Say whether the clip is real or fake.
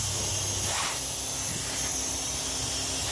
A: real